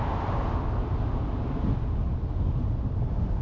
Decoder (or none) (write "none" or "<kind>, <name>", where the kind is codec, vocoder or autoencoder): none